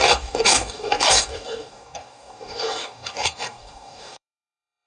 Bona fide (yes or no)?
no